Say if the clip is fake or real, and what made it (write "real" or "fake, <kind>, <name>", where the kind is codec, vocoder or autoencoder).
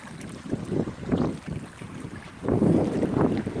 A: fake, vocoder, BigVGAN v2